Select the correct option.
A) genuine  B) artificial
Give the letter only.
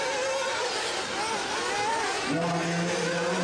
A